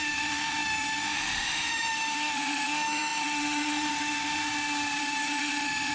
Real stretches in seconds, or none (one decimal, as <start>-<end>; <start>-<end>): 4.4-5.0